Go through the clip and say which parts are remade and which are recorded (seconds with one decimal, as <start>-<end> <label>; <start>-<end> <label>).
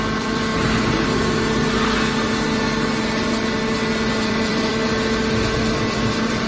0.0-0.5 remade; 0.5-4.1 recorded; 4.1-4.8 remade; 4.8-6.1 recorded; 6.1-6.5 remade